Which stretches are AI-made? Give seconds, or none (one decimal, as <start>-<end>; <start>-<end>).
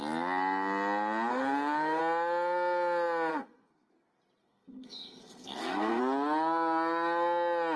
1.3-2.0; 3.3-3.9; 4.4-6.0